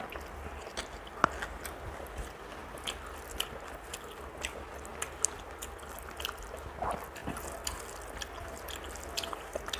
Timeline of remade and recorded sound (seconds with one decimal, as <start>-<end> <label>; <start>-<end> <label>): 0.0-4.9 recorded; 4.9-5.5 remade; 5.5-9.8 recorded